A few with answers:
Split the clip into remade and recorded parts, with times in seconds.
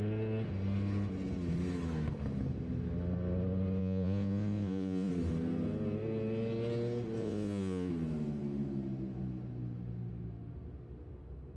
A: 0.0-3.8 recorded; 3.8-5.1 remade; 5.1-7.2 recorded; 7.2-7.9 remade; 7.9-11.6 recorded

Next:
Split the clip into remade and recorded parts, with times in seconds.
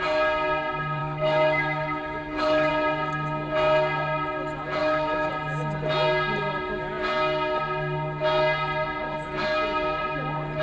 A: 0.0-1.0 recorded; 1.0-2.7 remade; 2.7-4.8 recorded; 4.8-5.3 remade; 5.3-10.6 recorded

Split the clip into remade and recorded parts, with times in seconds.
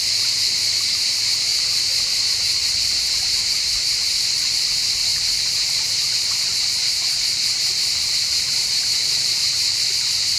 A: 0.0-0.8 recorded; 0.8-2.6 remade; 2.6-3.2 recorded; 3.2-10.4 remade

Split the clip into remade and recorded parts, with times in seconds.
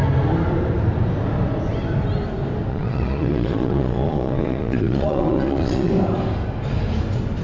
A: 0.0-2.7 recorded; 2.7-5.9 remade; 5.9-7.4 recorded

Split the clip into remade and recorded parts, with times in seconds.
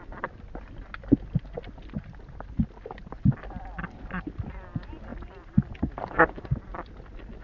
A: 0.0-7.4 recorded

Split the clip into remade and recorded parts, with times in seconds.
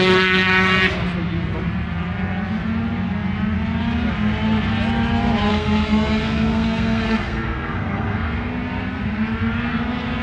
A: 0.0-5.5 recorded; 5.5-8.5 remade; 8.5-10.2 recorded